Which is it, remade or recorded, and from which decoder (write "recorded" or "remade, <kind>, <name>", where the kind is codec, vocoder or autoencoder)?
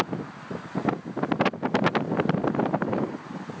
recorded